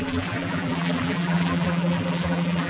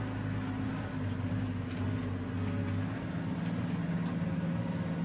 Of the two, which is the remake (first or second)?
first